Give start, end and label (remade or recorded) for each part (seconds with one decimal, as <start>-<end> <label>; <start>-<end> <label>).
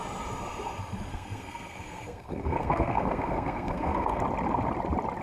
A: 0.0-1.1 recorded; 1.1-4.2 remade; 4.2-5.2 recorded